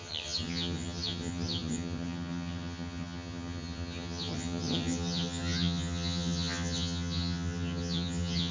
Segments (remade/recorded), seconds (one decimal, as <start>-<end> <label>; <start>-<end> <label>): 0.0-8.5 remade

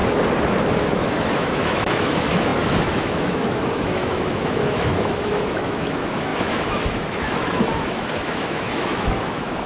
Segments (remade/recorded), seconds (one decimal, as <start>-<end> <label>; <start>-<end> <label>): 0.0-0.8 recorded; 0.8-9.7 remade

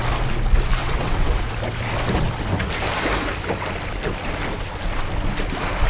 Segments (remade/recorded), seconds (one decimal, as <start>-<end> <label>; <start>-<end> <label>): 0.0-0.8 recorded; 0.8-1.4 remade; 1.4-5.9 recorded

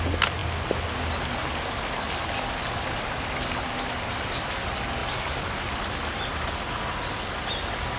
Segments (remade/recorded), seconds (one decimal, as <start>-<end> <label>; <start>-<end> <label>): 0.0-8.0 recorded